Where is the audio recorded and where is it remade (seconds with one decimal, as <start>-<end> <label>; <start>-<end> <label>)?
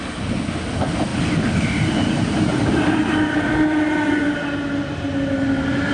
0.0-5.9 recorded